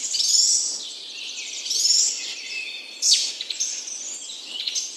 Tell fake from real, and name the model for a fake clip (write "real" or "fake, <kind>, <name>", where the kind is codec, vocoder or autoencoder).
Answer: real